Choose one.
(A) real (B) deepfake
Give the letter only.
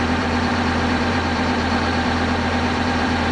B